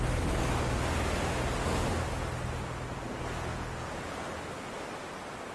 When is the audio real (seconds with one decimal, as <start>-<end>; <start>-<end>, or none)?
0.0-3.5; 4.1-5.5